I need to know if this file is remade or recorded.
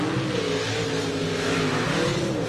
recorded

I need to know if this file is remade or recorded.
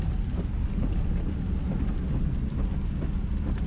recorded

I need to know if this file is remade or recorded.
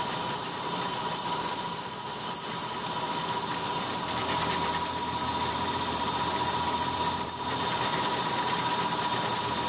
remade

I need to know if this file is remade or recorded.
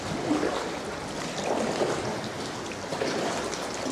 recorded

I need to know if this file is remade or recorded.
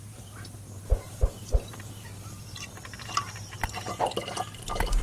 remade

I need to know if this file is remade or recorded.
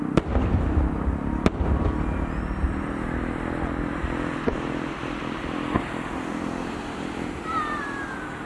remade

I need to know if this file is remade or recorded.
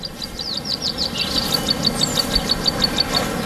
recorded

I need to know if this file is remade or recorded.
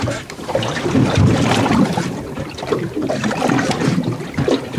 remade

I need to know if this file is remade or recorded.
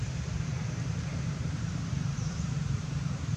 remade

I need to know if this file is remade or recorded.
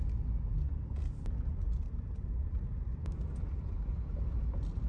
recorded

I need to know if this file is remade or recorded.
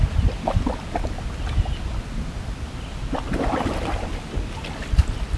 recorded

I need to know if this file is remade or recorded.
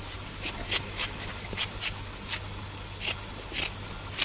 recorded